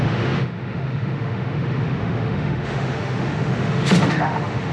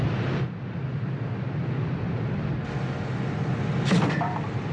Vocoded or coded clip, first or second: first